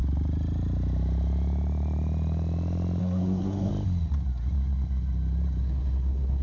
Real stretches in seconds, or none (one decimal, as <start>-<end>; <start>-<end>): 0.0-3.0; 3.7-5.6